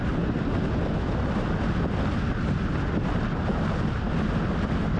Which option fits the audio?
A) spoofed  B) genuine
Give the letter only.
B